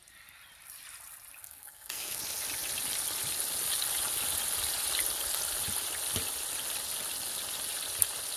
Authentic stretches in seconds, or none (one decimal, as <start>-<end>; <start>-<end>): 0.0-1.4; 2.2-8.4

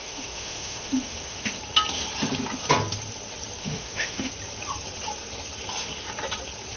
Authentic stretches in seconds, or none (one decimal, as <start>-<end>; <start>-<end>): 1.6-3.6; 4.3-6.8

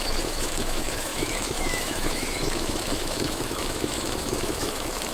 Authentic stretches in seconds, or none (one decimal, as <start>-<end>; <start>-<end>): none

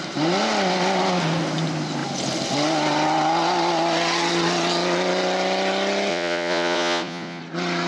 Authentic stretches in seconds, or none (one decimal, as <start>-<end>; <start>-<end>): 0.0-6.1; 7.4-7.9

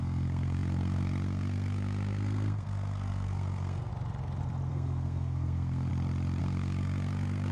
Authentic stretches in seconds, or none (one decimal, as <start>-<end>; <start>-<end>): 3.9-4.7; 5.9-6.4